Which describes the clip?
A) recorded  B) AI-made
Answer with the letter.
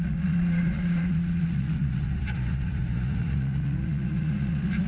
B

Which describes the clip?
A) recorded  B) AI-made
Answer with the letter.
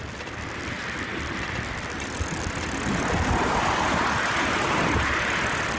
A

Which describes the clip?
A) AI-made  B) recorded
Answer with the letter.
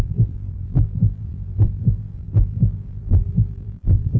A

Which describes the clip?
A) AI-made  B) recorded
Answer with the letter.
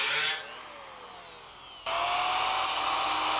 B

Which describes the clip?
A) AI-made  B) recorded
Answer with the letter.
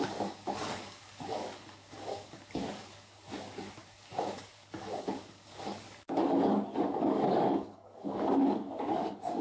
A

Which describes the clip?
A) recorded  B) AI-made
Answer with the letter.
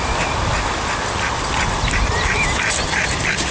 A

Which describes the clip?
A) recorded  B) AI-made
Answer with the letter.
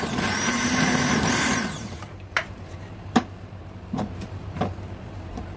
B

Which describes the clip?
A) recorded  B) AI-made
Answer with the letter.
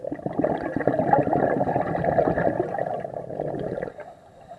A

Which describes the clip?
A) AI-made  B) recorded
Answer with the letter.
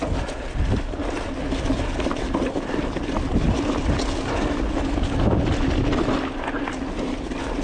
B